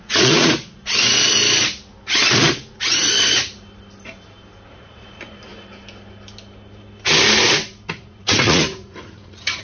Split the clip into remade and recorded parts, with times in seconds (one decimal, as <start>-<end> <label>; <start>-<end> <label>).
0.0-0.8 remade; 0.8-4.7 recorded; 4.7-5.5 remade; 5.5-7.9 recorded; 7.9-9.6 remade